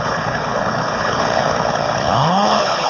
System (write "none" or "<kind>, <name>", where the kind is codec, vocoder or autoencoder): codec, HILCodec